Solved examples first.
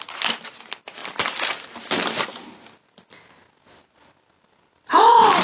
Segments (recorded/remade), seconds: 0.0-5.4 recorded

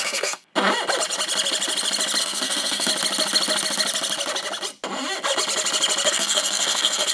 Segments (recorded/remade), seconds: 0.0-0.5 remade; 0.5-2.2 recorded; 2.2-2.9 remade; 2.9-6.1 recorded; 6.1-7.1 remade

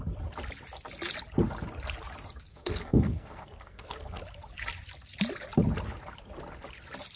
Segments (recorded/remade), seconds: 0.0-2.5 recorded; 2.5-4.2 remade; 4.2-7.2 recorded